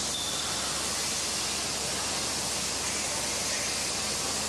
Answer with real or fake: real